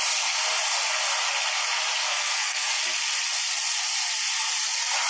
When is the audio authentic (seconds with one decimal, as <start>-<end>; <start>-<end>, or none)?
0.0-2.0; 2.8-5.1